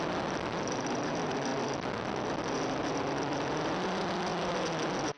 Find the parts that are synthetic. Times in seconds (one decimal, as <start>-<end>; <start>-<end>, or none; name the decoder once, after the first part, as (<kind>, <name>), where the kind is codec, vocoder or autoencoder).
none